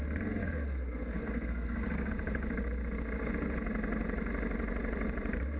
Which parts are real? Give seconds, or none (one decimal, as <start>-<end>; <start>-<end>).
0.0-0.4; 2.1-5.6